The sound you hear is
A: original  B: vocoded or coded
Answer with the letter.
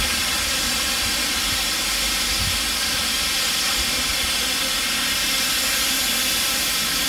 A